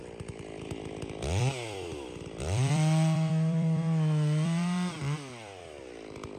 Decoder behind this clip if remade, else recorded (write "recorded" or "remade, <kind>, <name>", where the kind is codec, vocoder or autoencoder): remade, vocoder, BigVGAN v2